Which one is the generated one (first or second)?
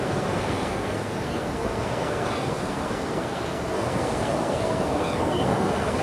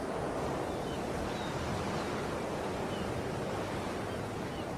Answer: first